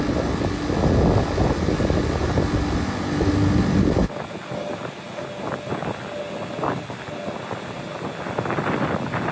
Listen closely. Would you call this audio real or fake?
real